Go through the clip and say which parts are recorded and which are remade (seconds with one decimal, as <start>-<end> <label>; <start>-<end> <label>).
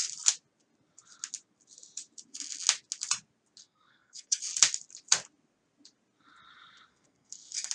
0.0-3.6 recorded; 3.6-4.4 remade; 4.4-6.9 recorded; 6.9-7.7 remade